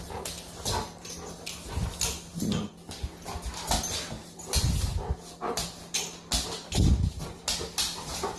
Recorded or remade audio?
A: recorded